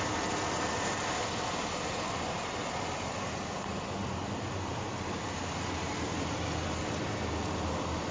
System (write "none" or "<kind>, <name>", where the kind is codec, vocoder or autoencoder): none